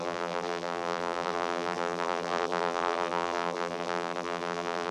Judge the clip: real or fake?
fake